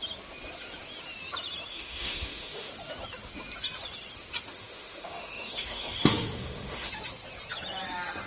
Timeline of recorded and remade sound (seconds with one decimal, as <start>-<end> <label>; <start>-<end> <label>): 0.0-1.7 recorded; 1.7-2.7 remade; 2.7-4.5 recorded; 4.5-6.9 remade; 6.9-8.3 recorded